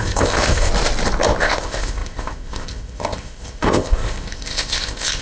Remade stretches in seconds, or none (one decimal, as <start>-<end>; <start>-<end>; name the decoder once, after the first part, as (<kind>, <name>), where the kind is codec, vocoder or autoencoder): 0.0-0.7 (codec, ZipCodec); 1.4-5.2